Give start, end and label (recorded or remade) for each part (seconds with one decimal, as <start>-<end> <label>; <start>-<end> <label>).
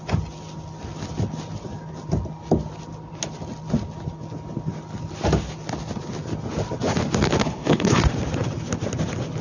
0.0-7.4 recorded; 7.4-8.0 remade; 8.0-9.4 recorded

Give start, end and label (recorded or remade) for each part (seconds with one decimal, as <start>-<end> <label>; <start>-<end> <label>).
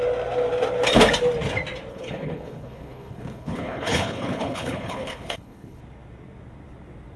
0.0-1.9 recorded; 1.9-5.8 remade; 5.8-7.2 recorded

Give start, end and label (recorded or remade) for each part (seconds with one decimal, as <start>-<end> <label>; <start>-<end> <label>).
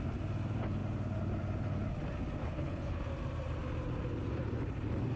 0.0-2.4 recorded; 2.4-3.0 remade; 3.0-5.2 recorded